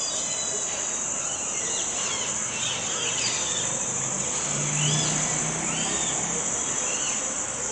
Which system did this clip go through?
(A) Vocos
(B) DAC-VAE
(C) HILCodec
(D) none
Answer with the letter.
D